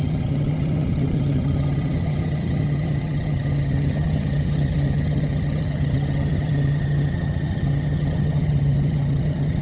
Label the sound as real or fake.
fake